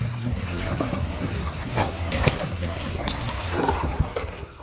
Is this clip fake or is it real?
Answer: fake